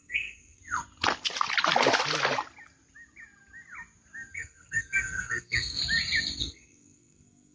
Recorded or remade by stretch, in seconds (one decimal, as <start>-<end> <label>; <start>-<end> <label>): 0.0-0.6 remade; 0.6-4.3 recorded; 4.3-5.8 remade; 5.8-6.4 recorded; 6.4-7.5 remade